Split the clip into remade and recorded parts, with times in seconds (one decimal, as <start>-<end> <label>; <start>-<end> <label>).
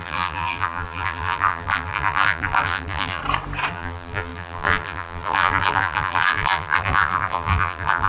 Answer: 0.0-3.2 remade; 3.2-3.7 recorded; 3.7-8.1 remade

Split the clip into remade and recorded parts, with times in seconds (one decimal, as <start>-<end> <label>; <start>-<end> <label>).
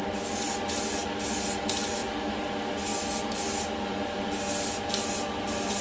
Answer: 0.0-5.8 recorded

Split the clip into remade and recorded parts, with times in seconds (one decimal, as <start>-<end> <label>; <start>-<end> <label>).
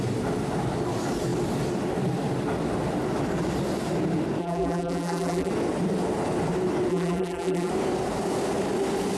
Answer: 0.0-4.4 recorded; 4.4-5.5 remade; 5.5-6.9 recorded; 6.9-7.7 remade; 7.7-9.2 recorded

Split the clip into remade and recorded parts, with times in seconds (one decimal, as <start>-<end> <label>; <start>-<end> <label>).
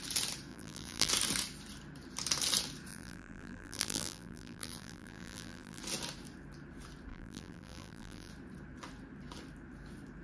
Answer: 0.0-0.5 recorded; 0.5-1.1 remade; 1.1-2.9 recorded; 2.9-5.8 remade; 5.8-7.1 recorded; 7.1-8.3 remade; 8.3-10.2 recorded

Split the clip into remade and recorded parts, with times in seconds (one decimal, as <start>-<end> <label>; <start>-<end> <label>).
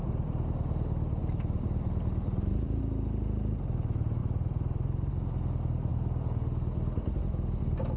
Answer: 0.0-1.2 recorded; 1.2-2.8 remade; 2.8-4.2 recorded; 4.2-5.1 remade; 5.1-8.0 recorded